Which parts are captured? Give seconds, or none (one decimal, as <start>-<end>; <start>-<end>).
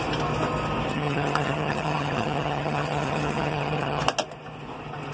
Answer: 0.0-0.9; 4.0-5.1